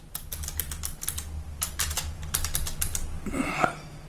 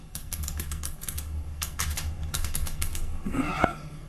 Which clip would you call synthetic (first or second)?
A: second